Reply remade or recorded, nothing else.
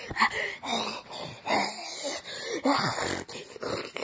recorded